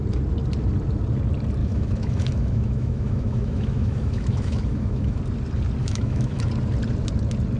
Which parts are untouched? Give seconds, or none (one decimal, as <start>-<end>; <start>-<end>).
0.0-1.6; 5.2-5.8; 6.5-7.6